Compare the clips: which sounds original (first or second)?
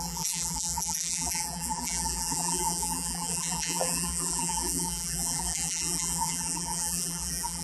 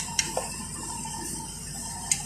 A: second